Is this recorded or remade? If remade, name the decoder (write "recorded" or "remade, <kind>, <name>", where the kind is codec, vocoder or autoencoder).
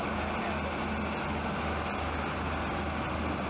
recorded